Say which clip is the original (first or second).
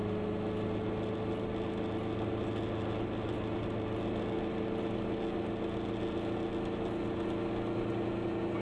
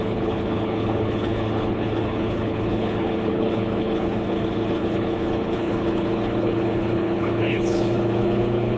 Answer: first